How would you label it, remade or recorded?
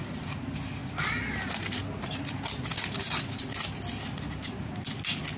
recorded